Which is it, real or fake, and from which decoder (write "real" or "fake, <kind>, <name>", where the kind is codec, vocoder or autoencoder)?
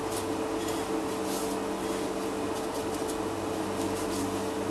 real